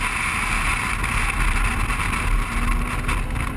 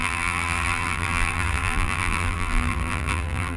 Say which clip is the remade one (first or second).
second